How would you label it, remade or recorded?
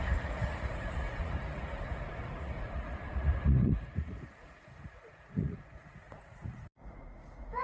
remade